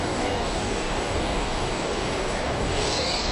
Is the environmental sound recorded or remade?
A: remade